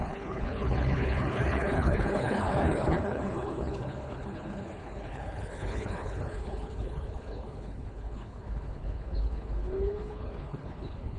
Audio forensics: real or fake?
fake